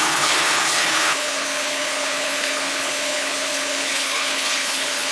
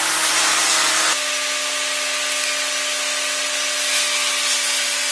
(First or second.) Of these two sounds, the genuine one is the second